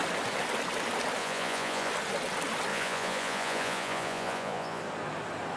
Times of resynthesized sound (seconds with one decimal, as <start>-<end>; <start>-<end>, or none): 1.2-1.9; 2.7-4.8